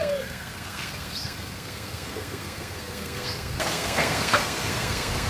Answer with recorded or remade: remade